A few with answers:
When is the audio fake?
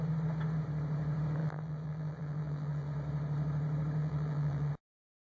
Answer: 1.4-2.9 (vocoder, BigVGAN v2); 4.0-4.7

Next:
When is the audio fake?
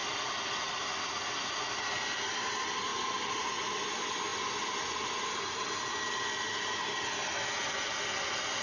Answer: 0.0-1.1 (vocoder, BigVGAN v2); 2.9-3.5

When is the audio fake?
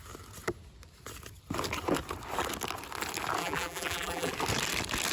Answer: 3.4-4.3 (vocoder, BigVGAN v2)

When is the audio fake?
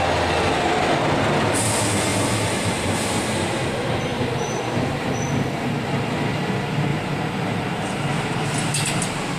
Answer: 4.1-5.1 (vocoder, BigVGAN v2); 6.9-8.1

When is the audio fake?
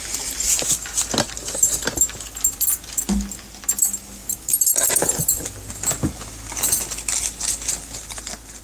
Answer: none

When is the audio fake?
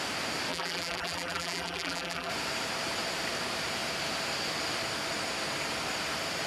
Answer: 0.5-2.3 (vocoder, BigVGAN v2)